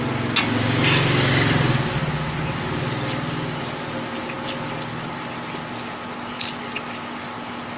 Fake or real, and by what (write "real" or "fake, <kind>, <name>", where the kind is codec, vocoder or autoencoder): real